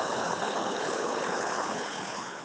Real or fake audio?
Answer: fake